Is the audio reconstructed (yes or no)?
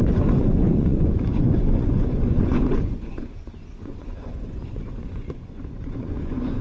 yes